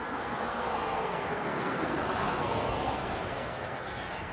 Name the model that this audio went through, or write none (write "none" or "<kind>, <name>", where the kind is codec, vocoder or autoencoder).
codec, SNAC